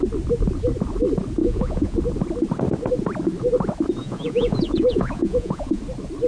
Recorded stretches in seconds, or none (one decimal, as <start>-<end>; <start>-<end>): 0.0-1.4; 2.0-4.0; 5.8-6.3